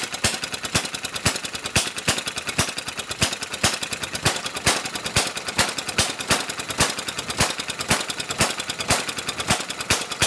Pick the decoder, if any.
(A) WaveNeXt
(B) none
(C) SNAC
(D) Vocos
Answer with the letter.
B